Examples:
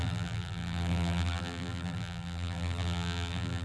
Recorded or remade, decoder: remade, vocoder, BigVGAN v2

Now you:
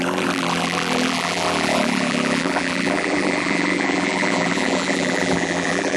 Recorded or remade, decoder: remade, vocoder, BigVGAN v2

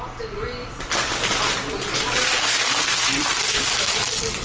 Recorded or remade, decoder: recorded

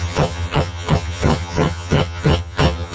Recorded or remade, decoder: remade, vocoder, HiFi-GAN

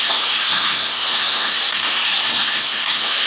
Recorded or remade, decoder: remade, codec, SNAC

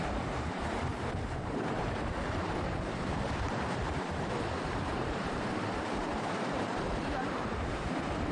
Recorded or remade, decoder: remade, vocoder, BigVGAN v2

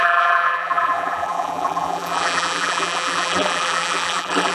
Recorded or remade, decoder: remade, vocoder, BigVGAN v2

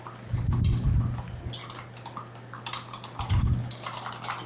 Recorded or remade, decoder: recorded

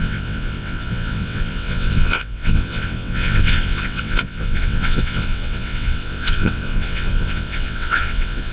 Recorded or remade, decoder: remade, vocoder, WaveNeXt